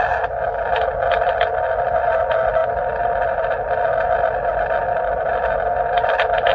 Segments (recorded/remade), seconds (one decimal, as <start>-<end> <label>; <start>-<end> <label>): 0.0-6.5 recorded